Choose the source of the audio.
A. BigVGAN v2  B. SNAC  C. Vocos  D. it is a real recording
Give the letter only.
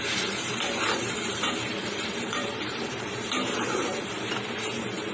A